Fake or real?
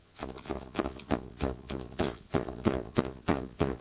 fake